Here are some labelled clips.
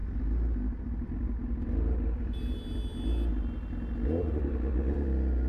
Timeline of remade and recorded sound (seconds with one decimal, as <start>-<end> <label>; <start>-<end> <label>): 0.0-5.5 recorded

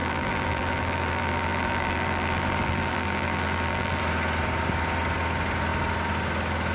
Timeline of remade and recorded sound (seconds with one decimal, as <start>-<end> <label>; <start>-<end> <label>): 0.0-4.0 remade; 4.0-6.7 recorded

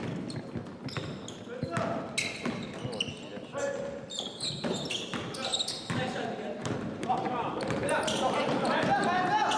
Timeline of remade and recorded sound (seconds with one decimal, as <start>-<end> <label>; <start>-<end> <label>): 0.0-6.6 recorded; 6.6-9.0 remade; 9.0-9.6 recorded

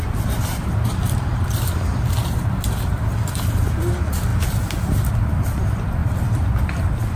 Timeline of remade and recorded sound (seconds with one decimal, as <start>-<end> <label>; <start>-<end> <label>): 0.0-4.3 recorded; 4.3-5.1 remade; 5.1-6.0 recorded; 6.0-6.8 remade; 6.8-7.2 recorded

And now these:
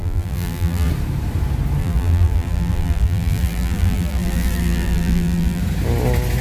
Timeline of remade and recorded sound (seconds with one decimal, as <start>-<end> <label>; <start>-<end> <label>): 0.0-0.9 remade; 0.9-1.8 recorded; 1.8-5.6 remade; 5.6-6.4 recorded